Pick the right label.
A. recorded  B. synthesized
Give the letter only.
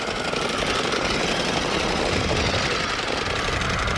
A